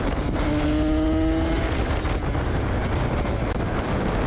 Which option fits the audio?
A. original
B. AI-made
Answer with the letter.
A